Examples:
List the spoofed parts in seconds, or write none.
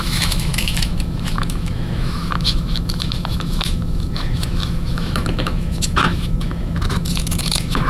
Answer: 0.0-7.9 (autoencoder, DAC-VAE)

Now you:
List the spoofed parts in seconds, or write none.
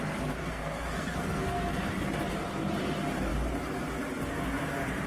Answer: 0.4-1.9 (codec, SNAC)